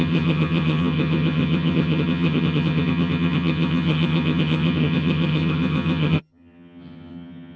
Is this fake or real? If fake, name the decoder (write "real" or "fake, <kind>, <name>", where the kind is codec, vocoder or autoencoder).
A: fake, vocoder, HiFi-GAN